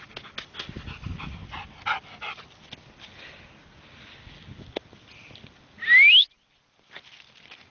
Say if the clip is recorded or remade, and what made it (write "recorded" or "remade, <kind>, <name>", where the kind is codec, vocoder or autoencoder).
recorded